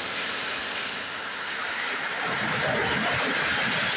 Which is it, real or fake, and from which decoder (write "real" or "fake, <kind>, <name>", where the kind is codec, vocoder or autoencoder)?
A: real